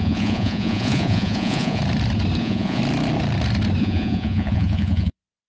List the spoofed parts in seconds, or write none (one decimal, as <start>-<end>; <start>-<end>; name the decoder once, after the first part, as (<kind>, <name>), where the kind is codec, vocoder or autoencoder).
0.0-1.8 (vocoder, Vocos); 2.4-2.8; 3.8-5.5